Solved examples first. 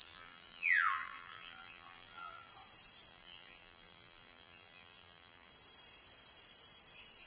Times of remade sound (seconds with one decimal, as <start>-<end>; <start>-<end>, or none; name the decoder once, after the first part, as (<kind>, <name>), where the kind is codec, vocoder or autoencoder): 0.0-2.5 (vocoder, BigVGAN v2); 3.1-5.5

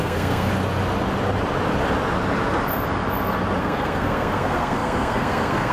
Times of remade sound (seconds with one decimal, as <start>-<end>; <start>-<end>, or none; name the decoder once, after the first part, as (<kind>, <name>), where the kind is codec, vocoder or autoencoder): 0.0-0.5 (codec, SNAC); 3.6-5.7

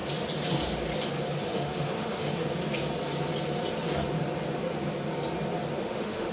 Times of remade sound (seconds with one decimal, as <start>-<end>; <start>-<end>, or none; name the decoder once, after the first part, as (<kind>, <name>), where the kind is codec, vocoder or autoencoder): 1.5-2.6 (autoencoder, DAC-VAE); 5.8-6.3